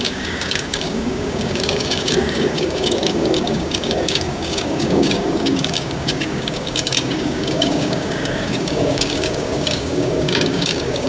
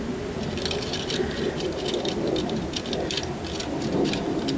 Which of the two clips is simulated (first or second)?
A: first